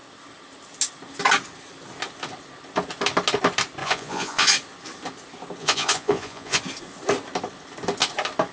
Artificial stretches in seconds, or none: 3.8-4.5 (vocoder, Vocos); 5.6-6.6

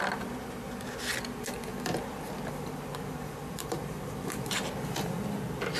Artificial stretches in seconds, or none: 1.7-5.2 (vocoder, BigVGAN v2)

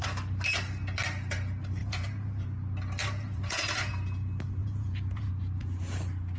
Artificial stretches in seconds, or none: 1.8-2.4 (vocoder, Vocos); 3.0-3.9; 4.6-5.3

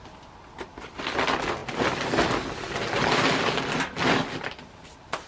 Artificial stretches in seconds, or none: none

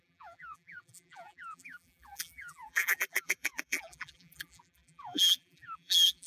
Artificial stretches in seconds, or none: 0.0-6.3 (vocoder, BigVGAN v2)

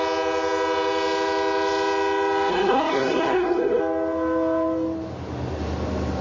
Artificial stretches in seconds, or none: 2.5-3.8 (codec, SNAC)

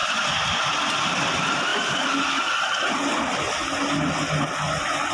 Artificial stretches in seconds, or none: 0.8-1.7 (vocoder, BigVGAN v2)